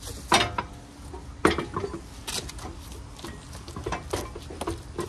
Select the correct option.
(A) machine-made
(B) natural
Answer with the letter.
B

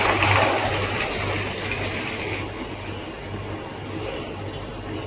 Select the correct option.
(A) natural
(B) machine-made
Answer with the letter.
A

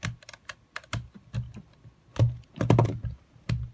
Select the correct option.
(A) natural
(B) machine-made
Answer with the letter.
A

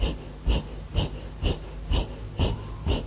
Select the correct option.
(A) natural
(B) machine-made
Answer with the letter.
A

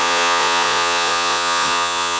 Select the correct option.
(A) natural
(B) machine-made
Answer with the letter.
B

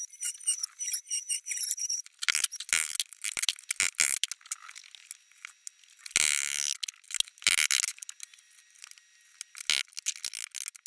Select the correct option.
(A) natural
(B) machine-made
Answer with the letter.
A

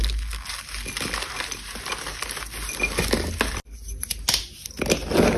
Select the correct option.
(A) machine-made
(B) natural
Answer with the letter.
B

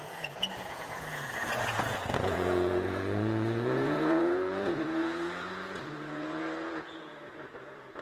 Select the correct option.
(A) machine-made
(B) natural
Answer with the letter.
A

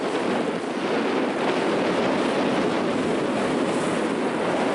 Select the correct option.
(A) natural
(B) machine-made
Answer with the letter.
A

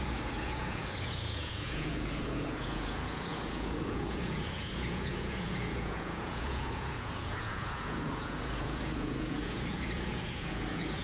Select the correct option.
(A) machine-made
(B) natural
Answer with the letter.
A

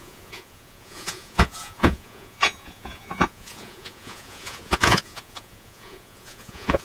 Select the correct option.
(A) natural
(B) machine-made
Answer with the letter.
B